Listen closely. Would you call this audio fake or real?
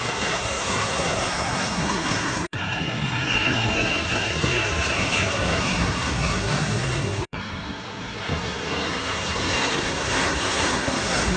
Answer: fake